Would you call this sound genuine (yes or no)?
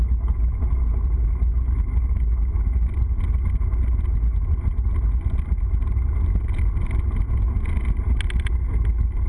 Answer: yes